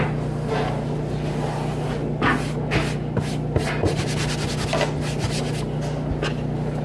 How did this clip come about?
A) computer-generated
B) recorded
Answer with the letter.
B